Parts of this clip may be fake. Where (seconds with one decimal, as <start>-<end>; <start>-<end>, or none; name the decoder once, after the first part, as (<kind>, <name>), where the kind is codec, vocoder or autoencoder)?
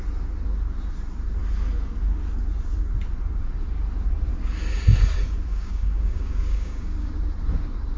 5.5-7.1 (codec, DAC)